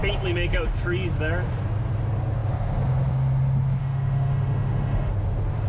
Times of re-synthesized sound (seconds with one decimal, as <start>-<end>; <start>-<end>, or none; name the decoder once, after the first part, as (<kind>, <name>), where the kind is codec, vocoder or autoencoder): 3.8-5.1 (autoencoder, DAC-VAE)